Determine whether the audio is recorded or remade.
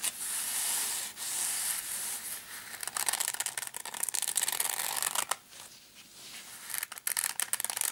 recorded